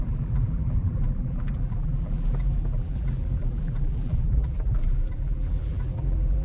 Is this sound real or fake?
fake